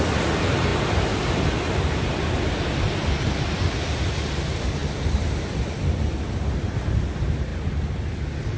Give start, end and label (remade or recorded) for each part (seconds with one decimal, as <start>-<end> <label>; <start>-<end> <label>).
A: 0.0-8.6 recorded